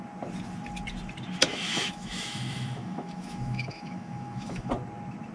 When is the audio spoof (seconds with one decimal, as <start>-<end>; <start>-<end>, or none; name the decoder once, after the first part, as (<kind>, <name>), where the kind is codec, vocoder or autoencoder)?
1.5-4.7 (autoencoder, DAC-VAE)